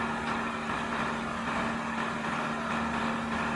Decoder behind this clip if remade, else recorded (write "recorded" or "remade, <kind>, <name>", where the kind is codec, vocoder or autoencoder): recorded